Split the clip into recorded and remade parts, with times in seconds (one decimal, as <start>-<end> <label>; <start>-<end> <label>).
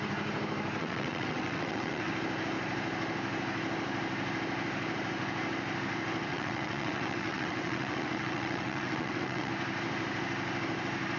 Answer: 0.0-0.8 recorded; 0.8-2.1 remade; 2.1-6.3 recorded; 6.3-9.5 remade; 9.5-11.2 recorded